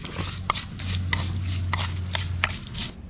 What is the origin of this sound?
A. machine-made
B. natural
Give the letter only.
B